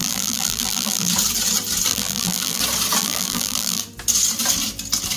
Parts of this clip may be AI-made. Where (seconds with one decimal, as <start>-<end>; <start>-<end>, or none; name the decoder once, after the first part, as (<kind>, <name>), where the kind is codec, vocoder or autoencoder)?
0.0-1.1 (vocoder, BigVGAN v2); 1.9-2.6; 3.0-3.8